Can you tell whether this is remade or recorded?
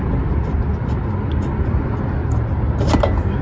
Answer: recorded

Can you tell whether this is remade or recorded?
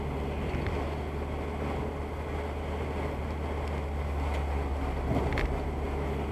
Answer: recorded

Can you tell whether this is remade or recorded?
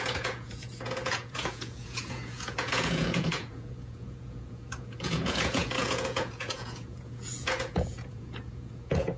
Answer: remade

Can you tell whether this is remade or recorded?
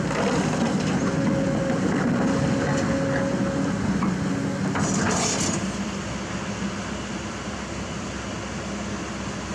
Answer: recorded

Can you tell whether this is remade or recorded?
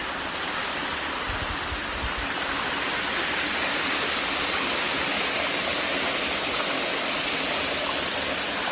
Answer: recorded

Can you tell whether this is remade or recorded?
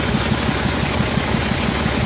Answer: remade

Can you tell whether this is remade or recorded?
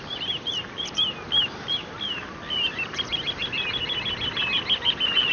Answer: recorded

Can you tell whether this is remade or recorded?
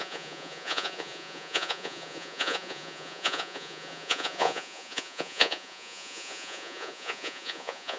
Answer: remade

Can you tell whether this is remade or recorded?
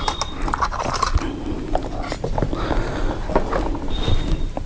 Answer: recorded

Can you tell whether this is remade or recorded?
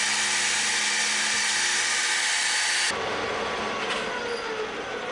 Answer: recorded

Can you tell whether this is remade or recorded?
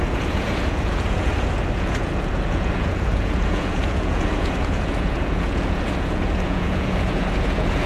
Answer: remade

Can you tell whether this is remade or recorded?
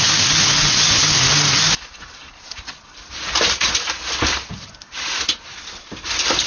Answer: recorded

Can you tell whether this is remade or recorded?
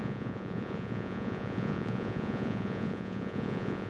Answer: remade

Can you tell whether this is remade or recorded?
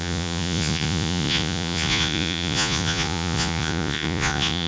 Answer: remade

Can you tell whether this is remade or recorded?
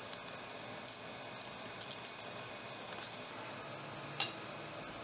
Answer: recorded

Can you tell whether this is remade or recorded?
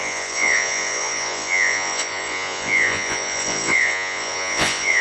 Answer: remade